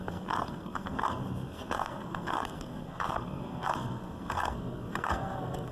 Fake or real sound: fake